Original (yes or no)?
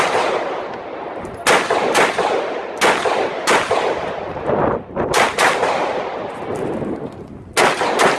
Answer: yes